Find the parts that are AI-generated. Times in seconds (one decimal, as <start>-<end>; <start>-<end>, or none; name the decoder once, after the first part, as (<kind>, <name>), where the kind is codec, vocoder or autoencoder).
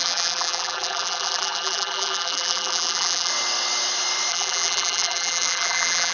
0.0-3.3 (vocoder, BigVGAN v2); 4.3-6.1